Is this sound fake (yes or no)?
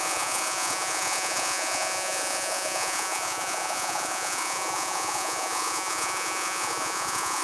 yes